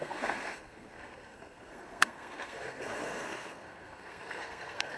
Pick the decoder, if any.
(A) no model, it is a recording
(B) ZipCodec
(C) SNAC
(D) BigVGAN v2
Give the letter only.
C